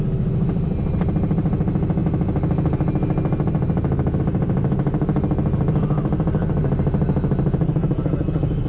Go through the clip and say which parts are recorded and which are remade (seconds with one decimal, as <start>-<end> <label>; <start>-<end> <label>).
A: 0.0-8.7 recorded